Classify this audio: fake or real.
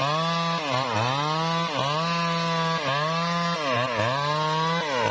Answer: real